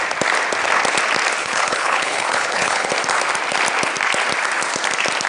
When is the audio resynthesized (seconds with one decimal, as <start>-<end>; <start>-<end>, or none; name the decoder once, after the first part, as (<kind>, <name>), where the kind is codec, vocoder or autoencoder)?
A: 1.4-2.9 (codec, HILCodec)